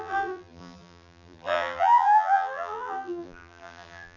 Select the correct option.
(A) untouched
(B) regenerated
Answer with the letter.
B